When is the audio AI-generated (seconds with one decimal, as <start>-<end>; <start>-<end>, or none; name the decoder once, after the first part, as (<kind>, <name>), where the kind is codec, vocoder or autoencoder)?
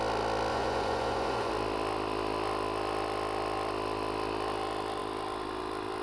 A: 0.5-1.5 (vocoder, Vocos)